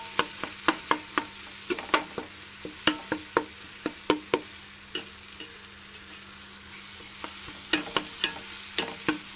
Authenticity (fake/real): real